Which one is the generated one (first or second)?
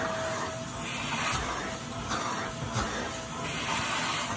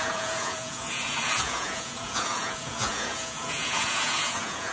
second